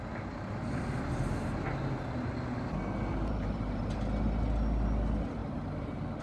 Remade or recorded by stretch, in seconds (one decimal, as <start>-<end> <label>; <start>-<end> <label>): 0.0-3.1 recorded; 3.1-3.8 remade; 3.8-5.4 recorded; 5.4-6.2 remade